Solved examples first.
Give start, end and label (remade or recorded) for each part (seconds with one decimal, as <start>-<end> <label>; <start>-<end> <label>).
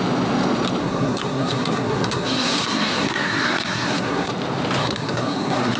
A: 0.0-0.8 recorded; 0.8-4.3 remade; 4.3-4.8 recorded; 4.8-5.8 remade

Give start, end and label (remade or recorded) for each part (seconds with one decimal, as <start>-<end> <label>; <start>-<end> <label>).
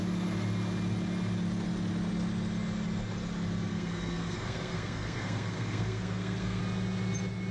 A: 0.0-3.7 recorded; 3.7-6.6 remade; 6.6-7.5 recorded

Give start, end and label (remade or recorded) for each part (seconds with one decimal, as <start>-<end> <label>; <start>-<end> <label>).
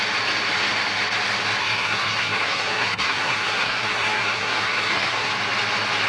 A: 0.0-1.6 recorded; 1.6-5.3 remade; 5.3-6.1 recorded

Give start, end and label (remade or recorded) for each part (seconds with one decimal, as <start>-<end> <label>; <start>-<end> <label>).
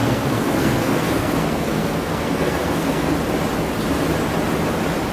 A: 0.0-3.1 remade; 3.1-5.1 recorded